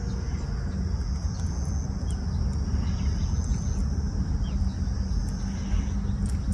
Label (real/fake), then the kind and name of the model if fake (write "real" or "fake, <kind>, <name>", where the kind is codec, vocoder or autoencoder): real